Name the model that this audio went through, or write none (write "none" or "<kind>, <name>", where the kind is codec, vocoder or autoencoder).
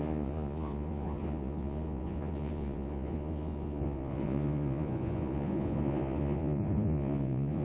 vocoder, Vocos